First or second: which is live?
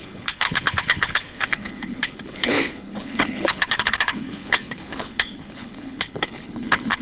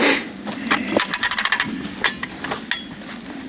second